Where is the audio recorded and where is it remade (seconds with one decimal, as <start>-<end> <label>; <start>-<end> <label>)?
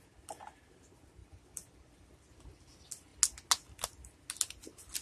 0.0-1.2 recorded; 1.2-2.3 remade; 2.3-5.0 recorded